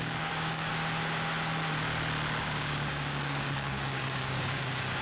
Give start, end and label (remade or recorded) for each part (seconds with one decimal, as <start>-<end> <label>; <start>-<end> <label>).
0.0-0.7 remade; 0.7-2.4 recorded; 2.4-5.0 remade